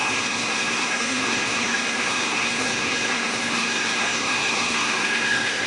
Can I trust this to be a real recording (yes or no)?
no